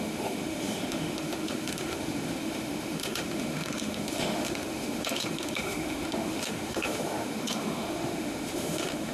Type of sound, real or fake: fake